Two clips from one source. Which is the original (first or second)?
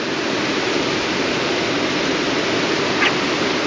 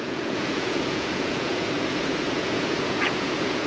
first